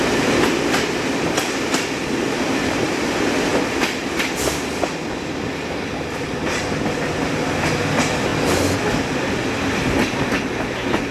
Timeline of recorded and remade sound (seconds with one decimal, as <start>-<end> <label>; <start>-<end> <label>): 0.0-11.1 recorded